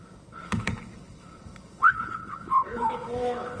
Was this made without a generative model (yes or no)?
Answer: no